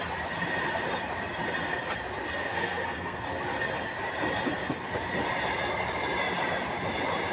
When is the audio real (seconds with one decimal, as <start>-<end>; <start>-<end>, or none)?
0.0-2.4; 3.2-7.3